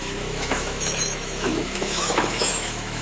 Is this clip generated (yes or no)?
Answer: yes